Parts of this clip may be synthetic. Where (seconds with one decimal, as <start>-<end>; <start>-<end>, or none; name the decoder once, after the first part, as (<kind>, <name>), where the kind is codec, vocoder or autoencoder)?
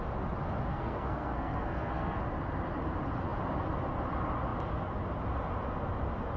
0.7-2.2 (codec, SNAC)